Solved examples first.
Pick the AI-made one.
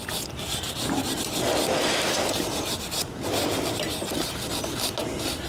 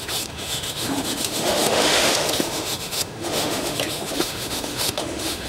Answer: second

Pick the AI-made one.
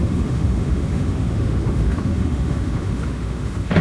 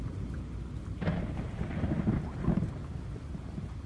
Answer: first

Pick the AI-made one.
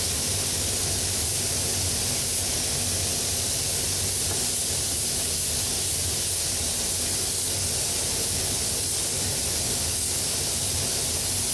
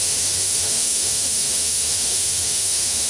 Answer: second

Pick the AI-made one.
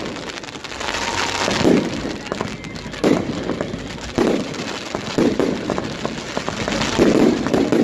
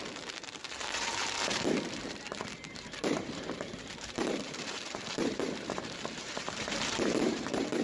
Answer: second